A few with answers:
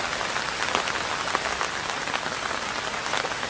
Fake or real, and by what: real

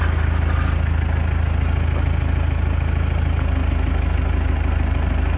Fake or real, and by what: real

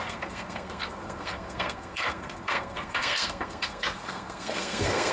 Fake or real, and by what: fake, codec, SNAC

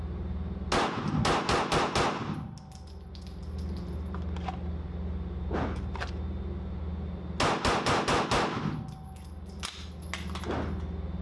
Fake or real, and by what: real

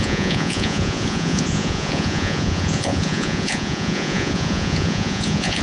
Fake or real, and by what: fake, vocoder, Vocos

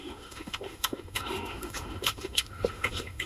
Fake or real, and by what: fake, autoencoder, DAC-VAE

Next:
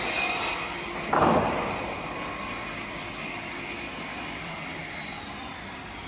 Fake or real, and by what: real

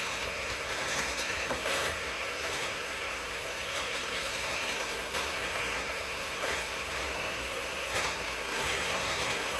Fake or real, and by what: fake, codec, SNAC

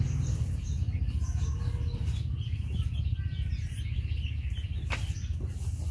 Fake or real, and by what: real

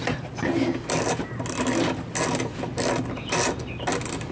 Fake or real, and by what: real